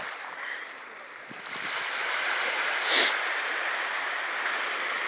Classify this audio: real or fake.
real